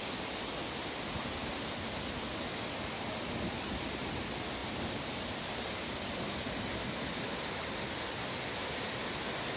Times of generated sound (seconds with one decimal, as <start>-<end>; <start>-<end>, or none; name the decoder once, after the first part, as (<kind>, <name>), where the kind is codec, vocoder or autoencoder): none